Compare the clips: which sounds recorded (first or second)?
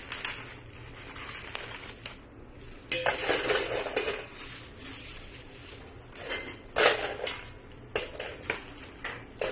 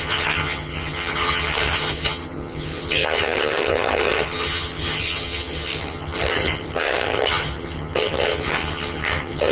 first